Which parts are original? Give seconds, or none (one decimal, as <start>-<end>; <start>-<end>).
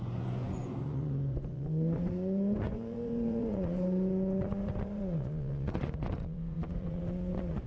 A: none